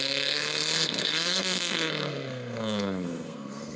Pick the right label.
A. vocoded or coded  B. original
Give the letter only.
A